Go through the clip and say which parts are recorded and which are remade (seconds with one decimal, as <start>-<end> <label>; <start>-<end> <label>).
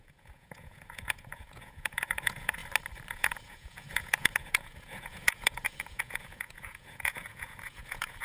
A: 0.0-2.6 remade; 2.6-3.1 recorded; 3.1-8.2 remade